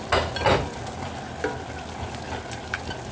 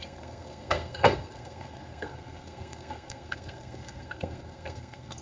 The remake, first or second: second